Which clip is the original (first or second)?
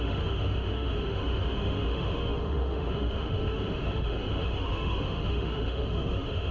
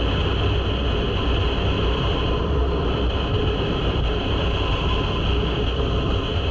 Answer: second